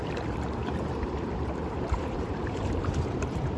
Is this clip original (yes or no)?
no